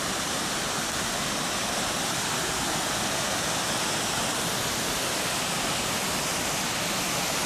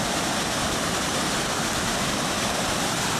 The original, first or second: first